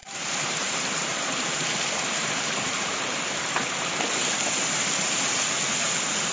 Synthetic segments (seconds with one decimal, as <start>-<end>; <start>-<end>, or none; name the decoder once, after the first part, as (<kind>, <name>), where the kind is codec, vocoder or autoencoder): 0.0-3.0 (vocoder, BigVGAN v2)